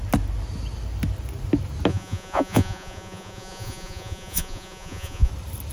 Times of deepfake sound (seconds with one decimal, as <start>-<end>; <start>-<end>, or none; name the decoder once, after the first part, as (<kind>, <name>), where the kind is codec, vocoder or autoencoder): 1.9-5.3 (vocoder, Vocos)